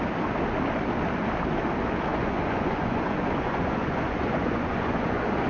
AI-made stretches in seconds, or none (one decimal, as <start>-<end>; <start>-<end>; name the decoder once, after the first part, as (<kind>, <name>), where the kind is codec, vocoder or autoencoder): 2.1-5.5 (vocoder, Vocos)